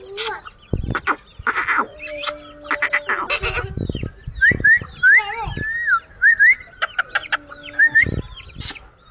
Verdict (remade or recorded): recorded